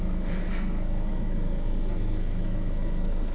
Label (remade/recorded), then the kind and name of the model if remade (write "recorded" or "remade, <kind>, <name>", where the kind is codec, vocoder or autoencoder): remade, codec, SNAC